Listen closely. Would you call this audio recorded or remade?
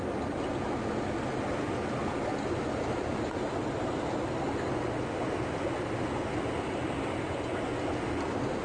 recorded